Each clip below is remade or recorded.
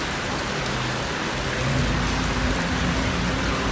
recorded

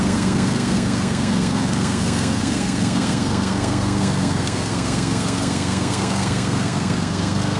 remade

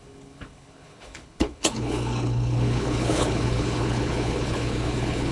remade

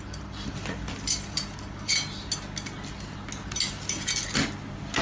recorded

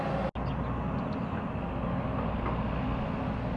recorded